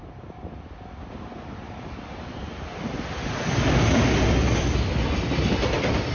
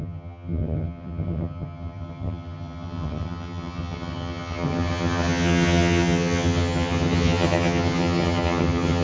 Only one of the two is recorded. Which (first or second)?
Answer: first